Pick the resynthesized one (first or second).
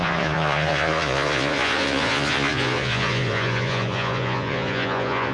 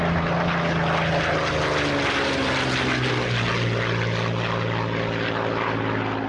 first